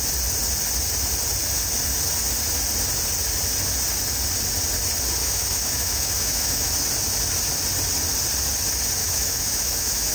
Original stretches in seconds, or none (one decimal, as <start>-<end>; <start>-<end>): 0.0-5.2; 6.7-9.0